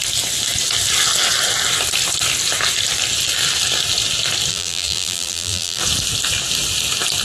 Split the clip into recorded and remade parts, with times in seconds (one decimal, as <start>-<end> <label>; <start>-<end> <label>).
0.0-4.5 recorded; 4.5-5.8 remade; 5.8-7.2 recorded